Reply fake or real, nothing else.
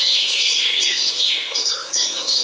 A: fake